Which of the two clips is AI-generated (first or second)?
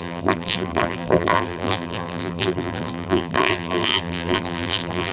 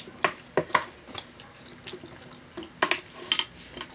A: first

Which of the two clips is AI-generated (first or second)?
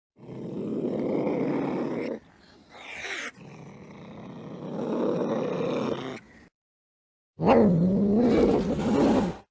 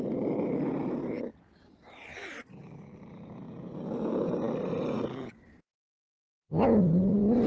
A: second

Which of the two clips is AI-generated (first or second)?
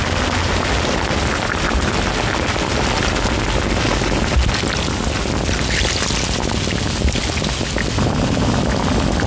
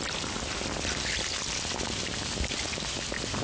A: second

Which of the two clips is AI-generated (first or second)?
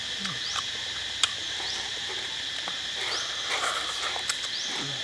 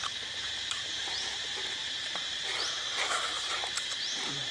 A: second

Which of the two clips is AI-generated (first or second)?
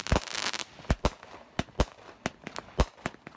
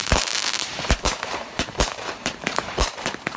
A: second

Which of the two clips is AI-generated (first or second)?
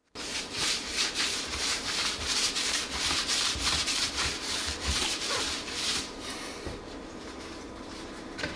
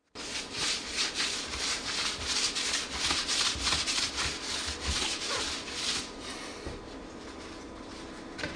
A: first